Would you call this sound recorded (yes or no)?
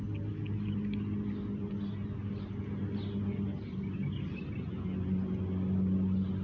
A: yes